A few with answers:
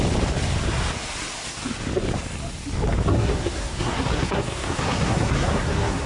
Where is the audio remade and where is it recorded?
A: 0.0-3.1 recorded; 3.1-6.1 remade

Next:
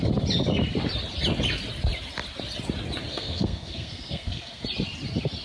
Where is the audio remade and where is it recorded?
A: 0.0-3.1 recorded; 3.1-4.6 remade; 4.6-5.4 recorded

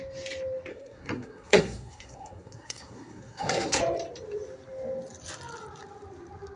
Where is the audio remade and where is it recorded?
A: 0.0-0.7 recorded; 0.7-3.8 remade; 3.8-6.6 recorded

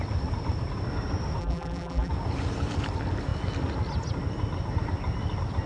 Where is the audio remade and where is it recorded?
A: 0.0-1.4 recorded; 1.4-2.1 remade; 2.1-5.7 recorded

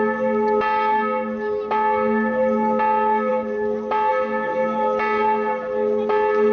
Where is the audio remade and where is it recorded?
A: 0.0-6.5 recorded

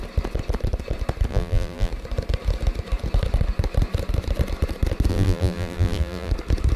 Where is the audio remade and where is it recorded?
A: 0.0-1.3 recorded; 1.3-1.9 remade; 1.9-5.1 recorded; 5.1-6.3 remade; 6.3-6.8 recorded

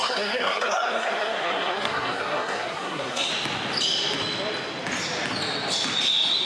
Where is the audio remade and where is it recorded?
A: 0.0-3.3 remade; 3.3-6.5 recorded

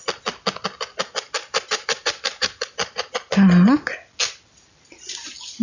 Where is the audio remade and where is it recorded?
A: 0.0-1.4 recorded; 1.4-3.1 remade; 3.1-5.6 recorded